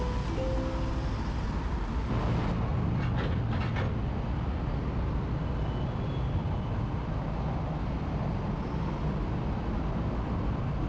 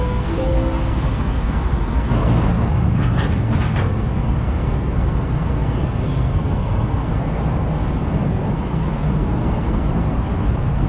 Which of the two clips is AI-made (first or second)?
second